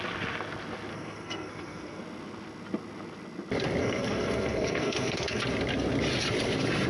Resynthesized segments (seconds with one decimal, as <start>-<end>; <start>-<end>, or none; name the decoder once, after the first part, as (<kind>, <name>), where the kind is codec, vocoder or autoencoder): 0.9-2.0 (codec, SNAC); 3.8-5.4